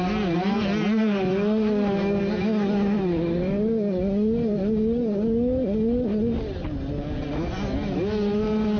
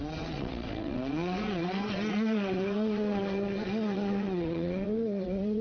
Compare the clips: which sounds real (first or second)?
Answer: first